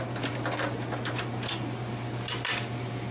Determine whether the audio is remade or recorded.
recorded